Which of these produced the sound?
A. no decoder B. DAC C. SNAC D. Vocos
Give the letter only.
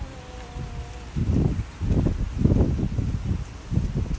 A